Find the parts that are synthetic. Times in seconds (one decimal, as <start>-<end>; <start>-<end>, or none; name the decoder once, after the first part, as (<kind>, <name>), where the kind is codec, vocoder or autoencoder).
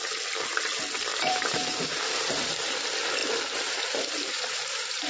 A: 1.1-2.5 (vocoder, BigVGAN v2); 3.2-5.1